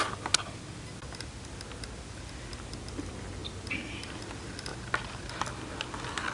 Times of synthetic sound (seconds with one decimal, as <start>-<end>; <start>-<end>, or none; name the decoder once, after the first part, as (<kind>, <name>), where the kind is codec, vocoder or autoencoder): none